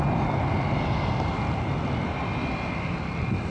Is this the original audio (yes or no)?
yes